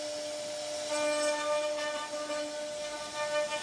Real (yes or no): yes